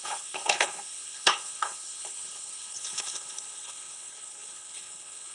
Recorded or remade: remade